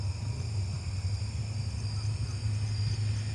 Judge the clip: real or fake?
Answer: real